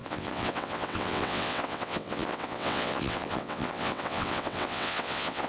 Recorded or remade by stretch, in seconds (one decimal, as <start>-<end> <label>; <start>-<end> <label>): 0.0-5.5 remade